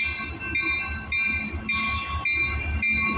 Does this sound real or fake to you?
real